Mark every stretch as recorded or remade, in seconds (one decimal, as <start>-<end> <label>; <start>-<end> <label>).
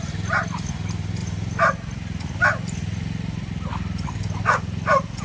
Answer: 0.0-5.2 recorded